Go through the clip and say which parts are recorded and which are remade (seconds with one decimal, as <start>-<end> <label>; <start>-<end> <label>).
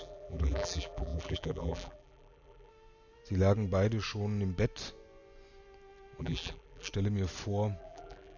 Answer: 0.0-2.7 remade; 2.7-6.2 recorded; 6.2-6.9 remade; 6.9-7.8 recorded; 7.8-8.4 remade